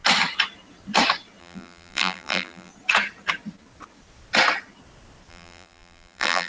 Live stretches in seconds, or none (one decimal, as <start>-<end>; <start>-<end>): 0.0-1.4; 2.7-5.3